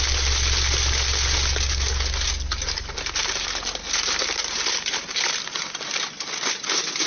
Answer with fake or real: real